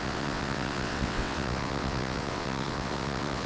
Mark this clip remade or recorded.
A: remade